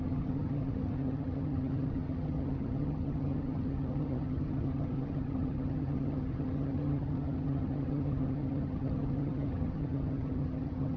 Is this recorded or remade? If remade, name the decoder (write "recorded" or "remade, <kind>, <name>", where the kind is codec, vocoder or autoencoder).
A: remade, vocoder, HiFi-GAN